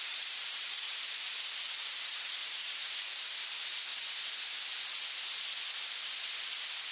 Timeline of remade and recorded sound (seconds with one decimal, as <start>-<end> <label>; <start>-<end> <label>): 0.0-0.9 remade; 0.9-1.6 recorded; 1.6-2.8 remade; 2.8-6.9 recorded